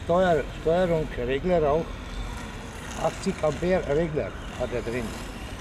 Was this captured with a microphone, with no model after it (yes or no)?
yes